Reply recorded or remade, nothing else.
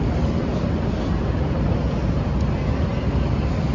recorded